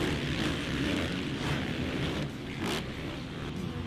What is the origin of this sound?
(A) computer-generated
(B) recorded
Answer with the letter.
B